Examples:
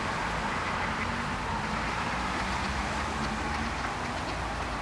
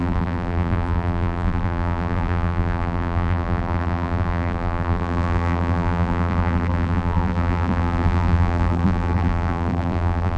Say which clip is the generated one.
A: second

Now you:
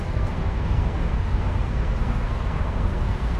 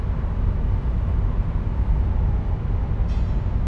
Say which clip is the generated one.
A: first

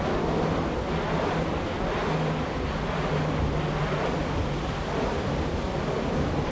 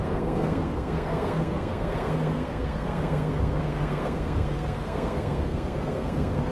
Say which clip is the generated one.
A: second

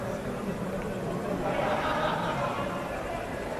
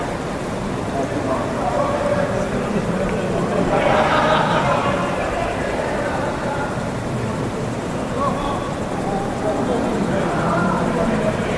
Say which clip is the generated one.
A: second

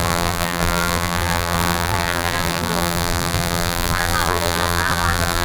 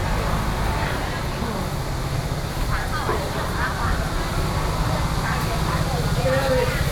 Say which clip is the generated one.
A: first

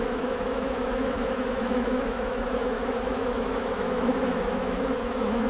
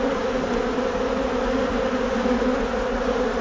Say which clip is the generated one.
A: first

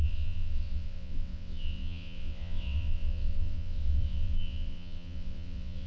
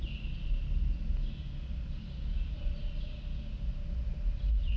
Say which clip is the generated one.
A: first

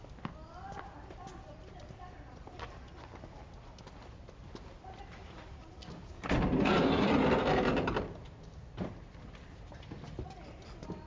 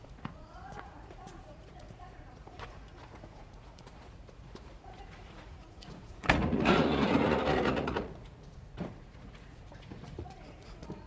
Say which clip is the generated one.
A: second